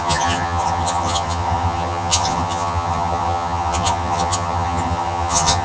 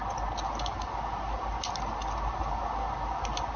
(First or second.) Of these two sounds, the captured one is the second